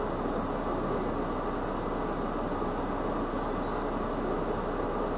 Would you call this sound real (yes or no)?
yes